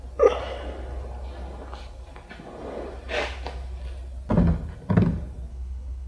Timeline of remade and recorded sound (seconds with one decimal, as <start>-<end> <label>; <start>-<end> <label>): 0.0-5.5 recorded; 5.5-6.1 remade